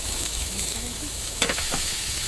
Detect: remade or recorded remade